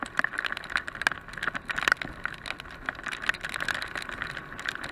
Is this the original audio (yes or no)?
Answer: yes